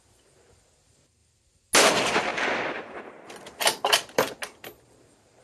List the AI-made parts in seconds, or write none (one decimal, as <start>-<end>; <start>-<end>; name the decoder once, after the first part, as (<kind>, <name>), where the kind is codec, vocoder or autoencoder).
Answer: none

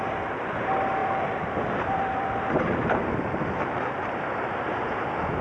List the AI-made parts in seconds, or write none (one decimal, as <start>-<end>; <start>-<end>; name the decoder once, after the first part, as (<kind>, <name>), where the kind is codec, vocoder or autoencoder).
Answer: 1.0-4.2 (vocoder, BigVGAN v2)

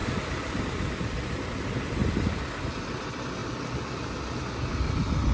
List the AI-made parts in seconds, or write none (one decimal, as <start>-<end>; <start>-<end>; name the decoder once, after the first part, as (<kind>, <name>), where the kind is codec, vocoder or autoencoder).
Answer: 0.0-0.6 (vocoder, BigVGAN v2); 3.4-4.2

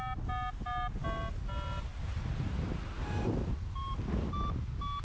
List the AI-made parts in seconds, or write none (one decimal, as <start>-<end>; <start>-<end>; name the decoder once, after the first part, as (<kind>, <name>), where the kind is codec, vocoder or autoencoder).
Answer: 1.9-4.3 (vocoder, BigVGAN v2)

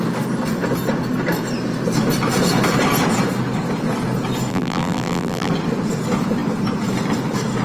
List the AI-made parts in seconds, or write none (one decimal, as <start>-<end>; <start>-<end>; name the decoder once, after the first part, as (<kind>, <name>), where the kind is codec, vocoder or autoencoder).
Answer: 4.5-5.5 (vocoder, BigVGAN v2)

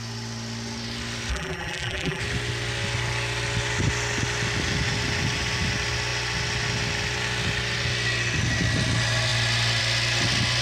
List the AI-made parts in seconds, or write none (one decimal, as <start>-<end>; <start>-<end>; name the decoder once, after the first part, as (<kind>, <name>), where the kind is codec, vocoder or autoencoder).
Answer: 1.3-2.2 (vocoder, BigVGAN v2)

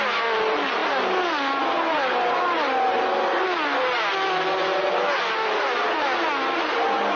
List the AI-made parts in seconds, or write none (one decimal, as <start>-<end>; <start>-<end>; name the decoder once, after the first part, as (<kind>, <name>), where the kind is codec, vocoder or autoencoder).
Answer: none

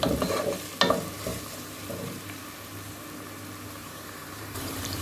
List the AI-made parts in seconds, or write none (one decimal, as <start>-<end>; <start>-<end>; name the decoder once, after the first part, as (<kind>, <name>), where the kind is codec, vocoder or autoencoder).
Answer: 1.3-2.4 (vocoder, BigVGAN v2); 3.8-5.0